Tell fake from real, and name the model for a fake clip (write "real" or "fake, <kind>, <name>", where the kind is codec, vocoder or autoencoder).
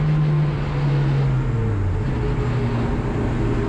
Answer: real